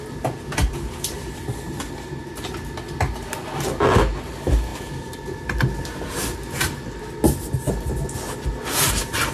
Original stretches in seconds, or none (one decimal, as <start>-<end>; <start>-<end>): 0.0-9.3